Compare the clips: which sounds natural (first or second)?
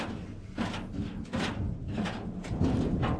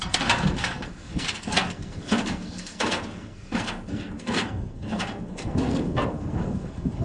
first